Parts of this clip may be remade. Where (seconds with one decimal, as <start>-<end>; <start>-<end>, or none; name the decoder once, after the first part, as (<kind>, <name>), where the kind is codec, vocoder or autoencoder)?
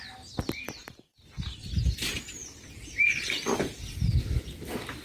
none